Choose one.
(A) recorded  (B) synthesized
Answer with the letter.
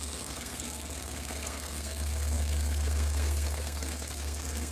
B